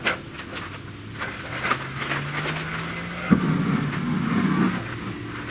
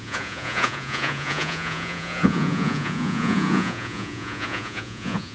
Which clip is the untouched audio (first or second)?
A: first